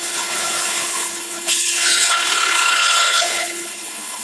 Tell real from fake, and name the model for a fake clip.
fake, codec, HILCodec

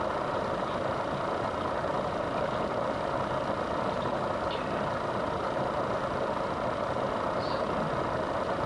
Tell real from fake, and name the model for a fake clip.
real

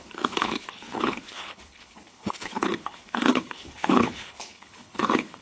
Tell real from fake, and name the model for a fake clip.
fake, codec, HILCodec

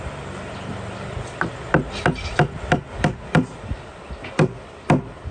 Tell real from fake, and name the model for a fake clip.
real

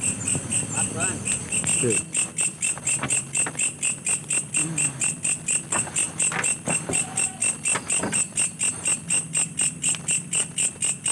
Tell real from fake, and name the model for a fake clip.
real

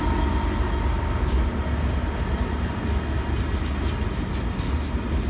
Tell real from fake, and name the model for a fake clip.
real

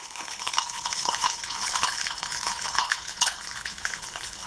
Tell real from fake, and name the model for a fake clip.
fake, codec, HILCodec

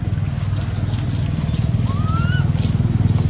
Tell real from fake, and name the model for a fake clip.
real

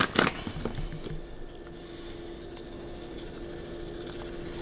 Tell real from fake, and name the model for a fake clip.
real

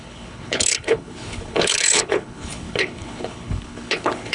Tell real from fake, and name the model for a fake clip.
fake, codec, HILCodec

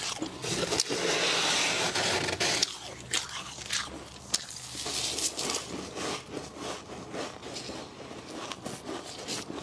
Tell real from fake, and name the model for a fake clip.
real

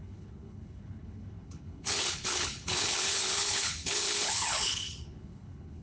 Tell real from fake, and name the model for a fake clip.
fake, codec, HILCodec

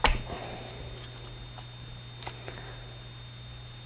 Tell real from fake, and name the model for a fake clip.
real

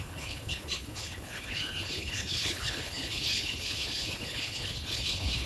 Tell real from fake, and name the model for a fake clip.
fake, codec, HILCodec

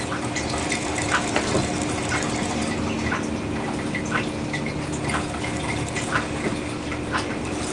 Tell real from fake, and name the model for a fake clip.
real